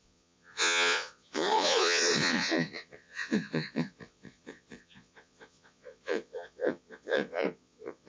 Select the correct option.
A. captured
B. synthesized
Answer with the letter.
B